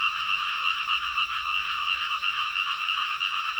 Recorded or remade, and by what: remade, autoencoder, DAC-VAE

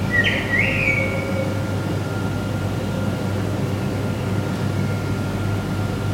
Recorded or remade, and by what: recorded